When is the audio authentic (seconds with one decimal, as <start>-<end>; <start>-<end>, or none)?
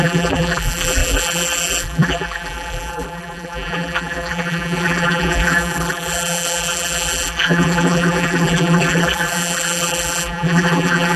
none